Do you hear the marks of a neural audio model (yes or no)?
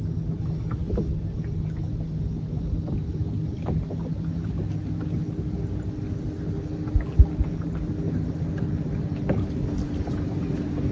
no